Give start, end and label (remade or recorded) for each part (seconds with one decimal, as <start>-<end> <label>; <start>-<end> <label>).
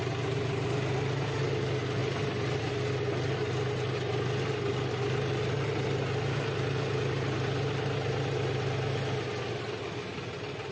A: 0.0-2.0 recorded; 2.0-2.7 remade; 2.7-10.7 recorded